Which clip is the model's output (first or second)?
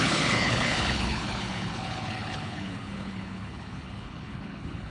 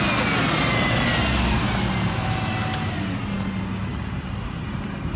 first